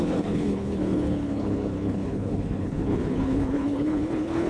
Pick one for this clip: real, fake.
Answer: fake